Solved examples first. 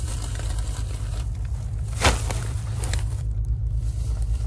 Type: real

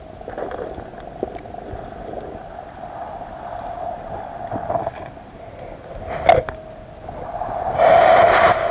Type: real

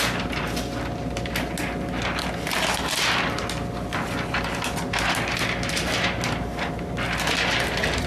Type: real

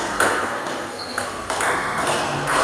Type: fake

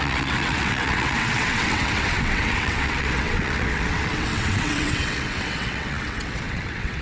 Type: fake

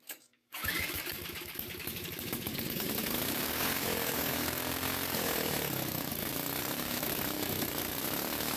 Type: fake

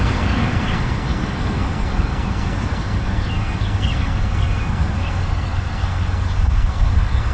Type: fake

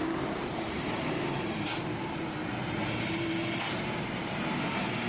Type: fake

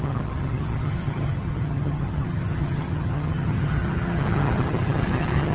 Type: fake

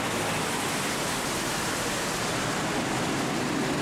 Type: real